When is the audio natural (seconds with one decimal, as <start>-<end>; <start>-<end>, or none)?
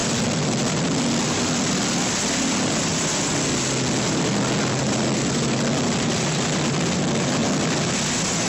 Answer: 2.9-4.0; 7.4-8.5